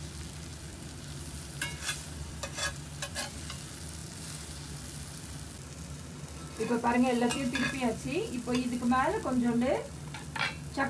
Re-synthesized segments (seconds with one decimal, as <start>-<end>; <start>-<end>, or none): 0.5-3.4